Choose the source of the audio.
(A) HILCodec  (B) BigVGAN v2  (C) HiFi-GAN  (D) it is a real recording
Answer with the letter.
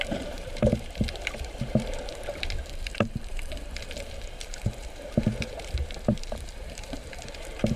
B